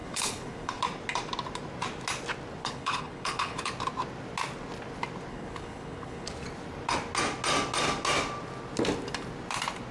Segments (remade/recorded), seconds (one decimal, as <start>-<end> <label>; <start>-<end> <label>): 0.0-0.8 remade; 0.8-2.6 recorded; 2.6-3.7 remade; 3.7-5.3 recorded; 5.3-6.3 remade; 6.3-9.9 recorded